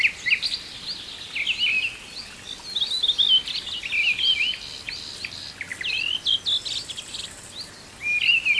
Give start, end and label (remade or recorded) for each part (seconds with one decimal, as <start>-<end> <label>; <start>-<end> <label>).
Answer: 0.0-8.6 recorded